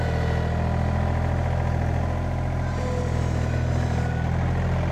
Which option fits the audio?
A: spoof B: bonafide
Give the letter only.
B